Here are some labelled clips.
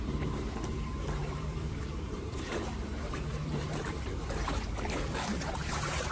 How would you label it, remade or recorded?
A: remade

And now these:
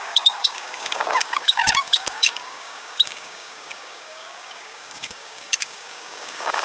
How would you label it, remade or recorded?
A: remade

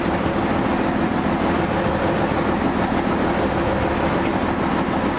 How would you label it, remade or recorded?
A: recorded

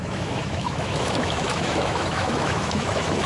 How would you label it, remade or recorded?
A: remade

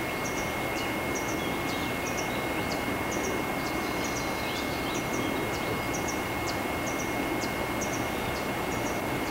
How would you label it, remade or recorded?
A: recorded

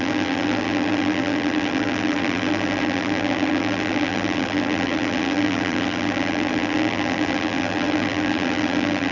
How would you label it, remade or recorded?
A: remade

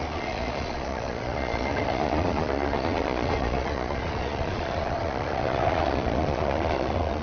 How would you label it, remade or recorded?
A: remade